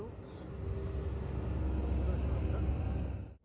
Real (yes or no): yes